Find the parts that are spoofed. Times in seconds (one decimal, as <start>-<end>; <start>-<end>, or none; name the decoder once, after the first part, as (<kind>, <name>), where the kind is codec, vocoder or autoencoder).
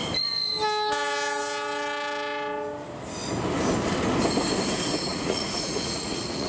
5.1-6.5 (vocoder, Vocos)